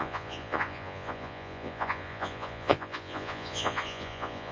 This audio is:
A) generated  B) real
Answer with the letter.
A